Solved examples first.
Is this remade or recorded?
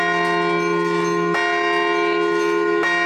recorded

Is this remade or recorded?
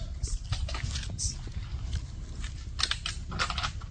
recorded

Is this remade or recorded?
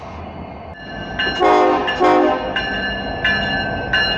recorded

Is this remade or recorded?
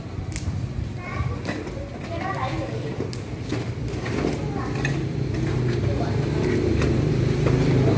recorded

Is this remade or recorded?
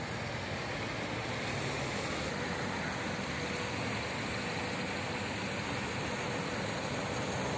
recorded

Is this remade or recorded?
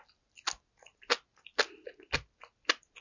recorded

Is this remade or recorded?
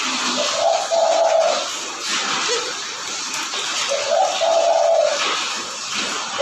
recorded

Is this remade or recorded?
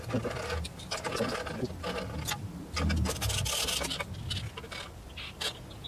recorded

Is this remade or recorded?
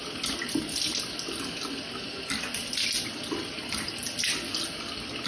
recorded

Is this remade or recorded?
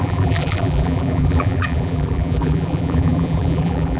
remade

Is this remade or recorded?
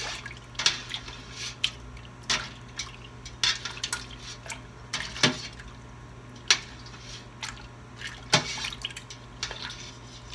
recorded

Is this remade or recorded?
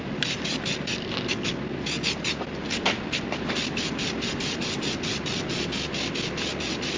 recorded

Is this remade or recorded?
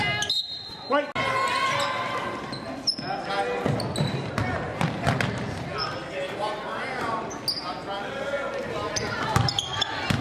recorded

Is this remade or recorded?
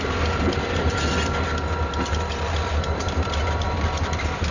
recorded